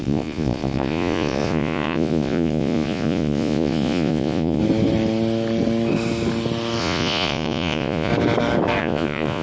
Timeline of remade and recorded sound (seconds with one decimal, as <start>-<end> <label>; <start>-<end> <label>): 0.0-4.6 remade; 4.6-6.8 recorded; 6.8-8.1 remade; 8.1-8.8 recorded; 8.8-9.4 remade